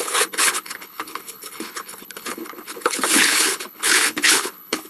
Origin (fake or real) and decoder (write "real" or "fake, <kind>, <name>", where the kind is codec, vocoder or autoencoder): fake, codec, HILCodec